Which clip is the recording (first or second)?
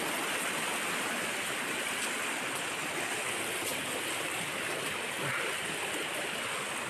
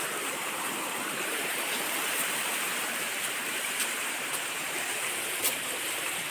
first